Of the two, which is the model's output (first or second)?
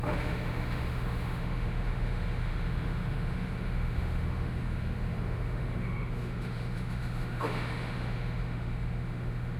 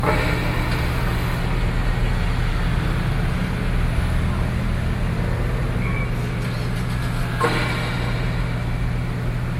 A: first